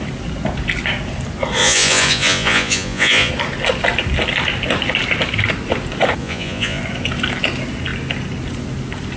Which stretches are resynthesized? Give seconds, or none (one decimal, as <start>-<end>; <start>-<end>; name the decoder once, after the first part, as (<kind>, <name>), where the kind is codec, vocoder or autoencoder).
1.6-3.3 (vocoder, Vocos); 6.2-6.8